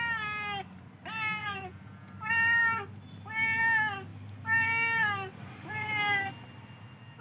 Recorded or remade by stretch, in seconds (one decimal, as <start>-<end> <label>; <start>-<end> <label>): 0.0-1.4 recorded; 1.4-2.1 remade; 2.1-7.2 recorded